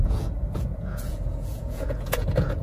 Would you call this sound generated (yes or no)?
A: yes